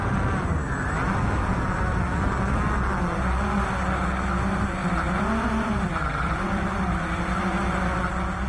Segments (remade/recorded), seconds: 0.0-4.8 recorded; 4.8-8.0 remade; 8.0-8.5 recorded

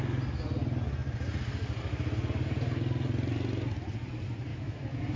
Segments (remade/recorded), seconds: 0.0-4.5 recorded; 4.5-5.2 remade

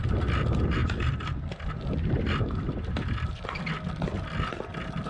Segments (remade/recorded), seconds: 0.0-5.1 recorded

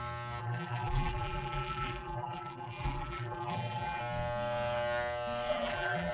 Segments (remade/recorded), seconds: 0.0-0.4 recorded; 0.4-4.0 remade; 4.0-5.5 recorded; 5.5-6.1 remade

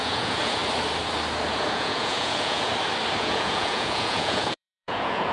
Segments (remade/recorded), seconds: 0.0-0.6 remade; 0.6-1.5 recorded; 1.5-2.7 remade; 2.7-3.2 recorded; 3.2-5.3 remade